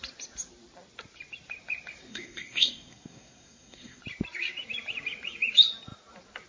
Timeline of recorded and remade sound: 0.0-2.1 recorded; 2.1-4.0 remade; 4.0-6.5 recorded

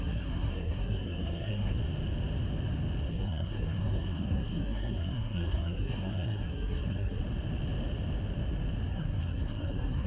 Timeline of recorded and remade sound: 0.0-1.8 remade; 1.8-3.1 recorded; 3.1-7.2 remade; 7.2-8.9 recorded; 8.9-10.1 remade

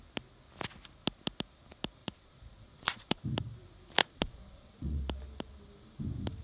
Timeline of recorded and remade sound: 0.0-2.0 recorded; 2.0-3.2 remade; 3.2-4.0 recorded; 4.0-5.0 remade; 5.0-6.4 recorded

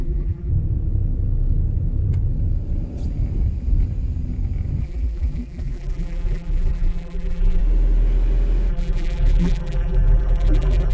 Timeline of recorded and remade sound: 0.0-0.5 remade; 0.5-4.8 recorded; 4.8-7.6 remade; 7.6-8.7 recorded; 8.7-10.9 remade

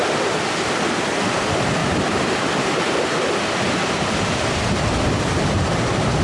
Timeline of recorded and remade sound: 0.0-1.8 recorded; 1.8-4.8 remade; 4.8-6.2 recorded

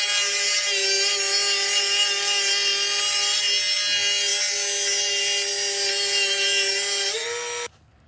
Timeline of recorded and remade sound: 0.0-8.1 recorded